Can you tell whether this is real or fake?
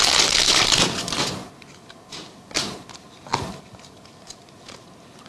real